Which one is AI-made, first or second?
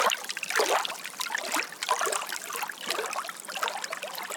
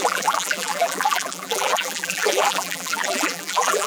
second